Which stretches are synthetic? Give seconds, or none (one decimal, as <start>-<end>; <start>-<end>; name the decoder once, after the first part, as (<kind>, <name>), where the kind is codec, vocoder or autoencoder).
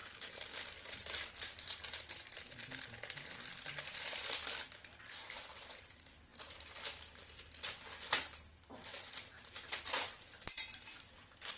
0.0-2.5 (vocoder, BigVGAN v2)